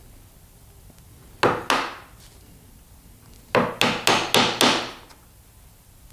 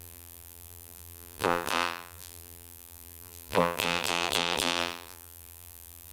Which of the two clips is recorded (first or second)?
first